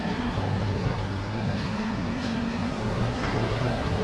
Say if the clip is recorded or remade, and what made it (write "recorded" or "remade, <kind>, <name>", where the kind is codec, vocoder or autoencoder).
remade, codec, SNAC